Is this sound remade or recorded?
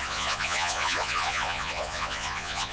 remade